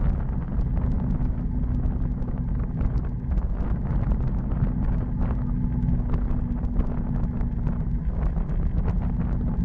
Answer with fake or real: real